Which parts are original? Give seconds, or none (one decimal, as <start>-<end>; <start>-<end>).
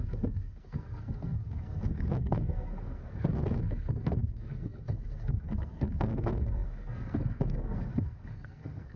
none